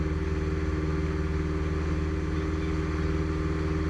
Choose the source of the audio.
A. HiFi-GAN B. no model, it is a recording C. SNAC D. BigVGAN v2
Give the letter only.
B